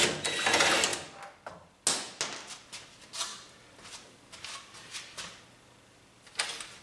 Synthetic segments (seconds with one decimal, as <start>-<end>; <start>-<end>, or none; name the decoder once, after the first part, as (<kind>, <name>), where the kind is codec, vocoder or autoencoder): none